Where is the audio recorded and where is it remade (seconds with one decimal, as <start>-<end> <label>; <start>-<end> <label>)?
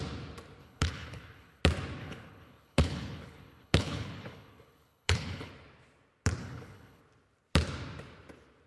0.0-0.6 recorded; 0.6-1.6 remade; 1.6-2.0 recorded; 2.0-5.5 remade; 5.5-6.4 recorded; 6.4-7.0 remade; 7.0-8.7 recorded